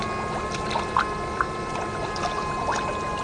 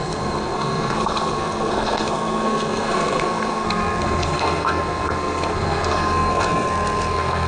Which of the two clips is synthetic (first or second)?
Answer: second